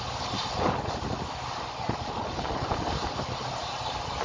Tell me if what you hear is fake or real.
real